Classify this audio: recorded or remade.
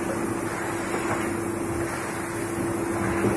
recorded